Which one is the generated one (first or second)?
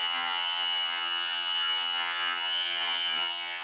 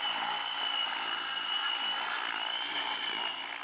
first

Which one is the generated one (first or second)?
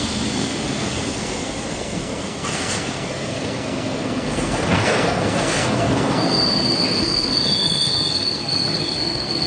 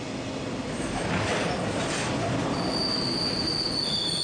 first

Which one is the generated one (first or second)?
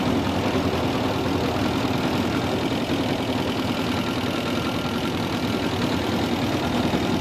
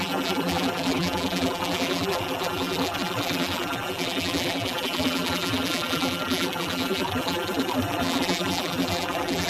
second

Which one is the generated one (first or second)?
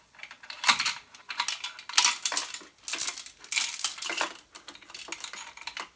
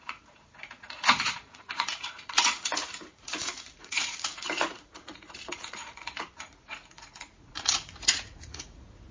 second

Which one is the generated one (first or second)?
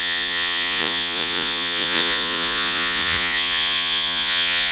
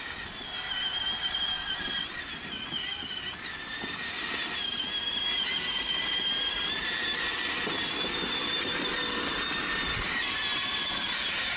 first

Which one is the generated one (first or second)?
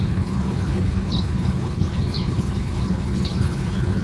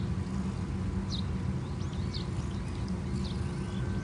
first